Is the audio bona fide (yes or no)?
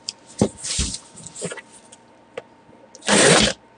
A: yes